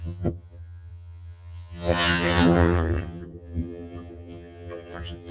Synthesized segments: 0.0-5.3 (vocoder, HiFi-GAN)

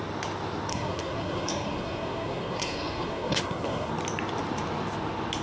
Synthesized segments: 0.7-3.9 (codec, SNAC)